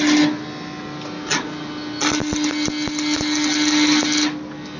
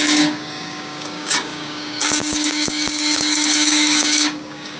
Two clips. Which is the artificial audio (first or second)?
second